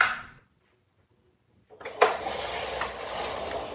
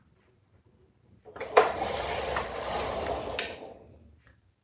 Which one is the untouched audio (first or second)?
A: first